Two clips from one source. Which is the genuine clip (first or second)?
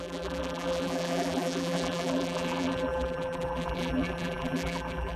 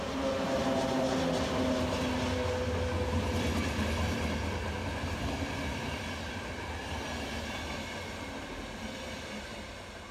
second